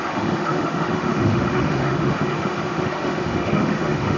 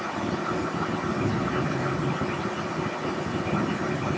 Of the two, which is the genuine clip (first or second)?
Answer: second